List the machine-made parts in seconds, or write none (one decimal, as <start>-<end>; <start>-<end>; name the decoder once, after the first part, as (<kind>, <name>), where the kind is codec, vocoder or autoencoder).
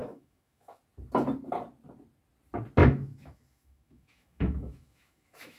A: 0.0-0.8 (autoencoder, DAC-VAE); 2.8-5.6